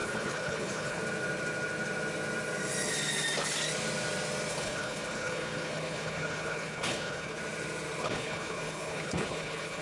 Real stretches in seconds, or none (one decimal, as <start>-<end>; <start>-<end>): 1.0-4.5; 7.4-8.0